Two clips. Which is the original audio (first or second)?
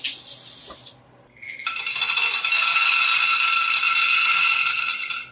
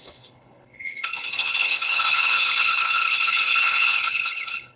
first